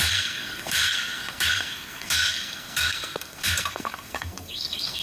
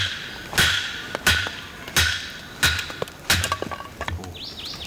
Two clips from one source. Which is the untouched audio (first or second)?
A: second